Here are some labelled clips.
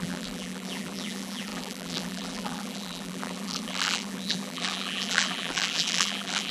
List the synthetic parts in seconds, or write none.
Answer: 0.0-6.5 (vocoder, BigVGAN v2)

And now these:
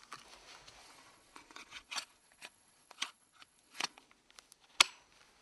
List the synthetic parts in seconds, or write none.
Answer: 0.8-4.0 (vocoder, Vocos)

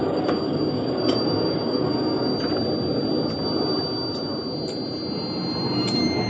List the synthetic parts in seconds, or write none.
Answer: 0.0-2.3 (codec, DAC)